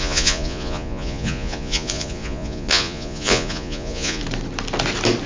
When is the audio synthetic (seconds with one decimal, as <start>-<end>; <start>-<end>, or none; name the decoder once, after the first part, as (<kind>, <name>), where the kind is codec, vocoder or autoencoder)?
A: 0.0-4.2 (vocoder, Vocos)